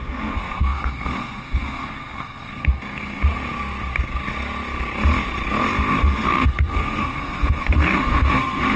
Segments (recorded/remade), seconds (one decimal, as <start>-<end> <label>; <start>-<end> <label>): 0.0-3.2 remade; 3.2-5.9 recorded; 5.9-8.8 remade